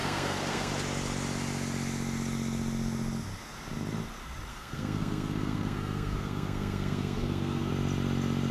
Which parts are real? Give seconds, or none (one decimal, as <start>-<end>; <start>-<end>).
0.7-4.5; 7.7-8.5